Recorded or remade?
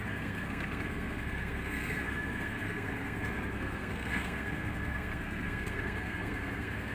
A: remade